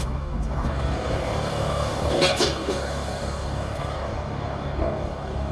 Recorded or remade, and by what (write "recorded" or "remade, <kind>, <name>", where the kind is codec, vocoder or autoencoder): remade, codec, DAC